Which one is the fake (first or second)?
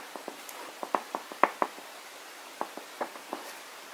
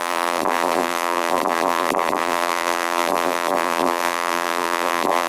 second